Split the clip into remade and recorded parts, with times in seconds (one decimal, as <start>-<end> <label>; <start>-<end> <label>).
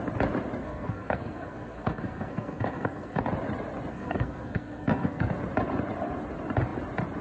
0.0-0.6 recorded; 0.6-3.2 remade; 3.2-3.9 recorded; 3.9-5.3 remade; 5.3-7.2 recorded